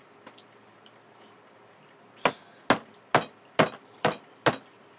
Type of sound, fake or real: real